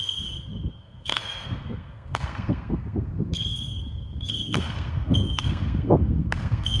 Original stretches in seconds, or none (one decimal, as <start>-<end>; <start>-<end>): none